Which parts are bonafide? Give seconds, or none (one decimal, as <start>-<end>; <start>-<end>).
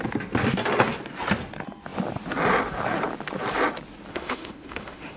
0.0-4.1